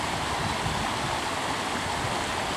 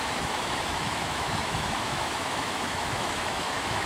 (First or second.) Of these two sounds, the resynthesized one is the second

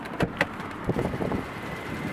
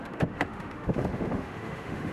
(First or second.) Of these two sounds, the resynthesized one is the second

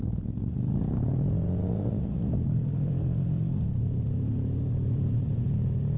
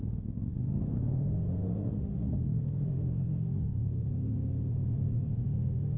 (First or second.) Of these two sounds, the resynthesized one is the second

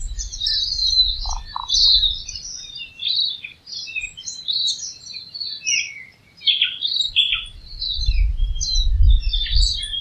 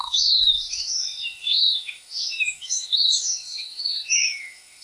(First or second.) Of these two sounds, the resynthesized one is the second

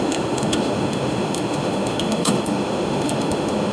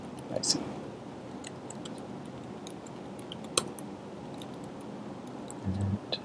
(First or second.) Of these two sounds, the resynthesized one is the first